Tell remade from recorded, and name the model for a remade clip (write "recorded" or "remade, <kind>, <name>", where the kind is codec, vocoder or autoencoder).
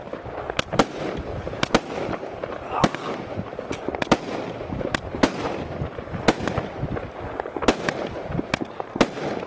recorded